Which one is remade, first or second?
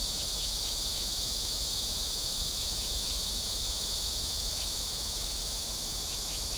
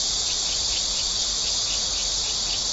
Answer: first